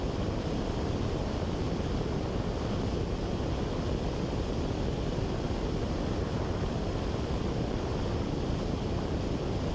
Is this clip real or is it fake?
real